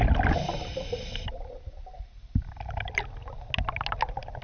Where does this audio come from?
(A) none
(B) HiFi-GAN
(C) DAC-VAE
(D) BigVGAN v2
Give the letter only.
A